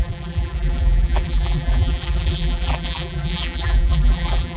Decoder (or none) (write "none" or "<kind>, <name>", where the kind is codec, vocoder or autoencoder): vocoder, BigVGAN v2